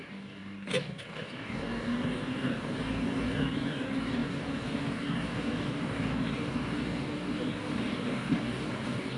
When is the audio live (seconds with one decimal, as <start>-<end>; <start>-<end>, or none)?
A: none